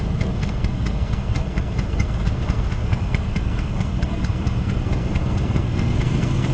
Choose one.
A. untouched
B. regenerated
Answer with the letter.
B